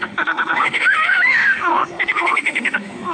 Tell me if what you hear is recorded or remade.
remade